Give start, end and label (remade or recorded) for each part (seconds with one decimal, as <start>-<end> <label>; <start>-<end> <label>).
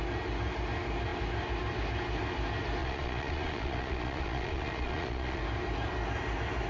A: 0.0-2.8 recorded; 2.8-5.4 remade; 5.4-6.7 recorded